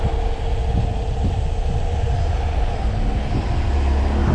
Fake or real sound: real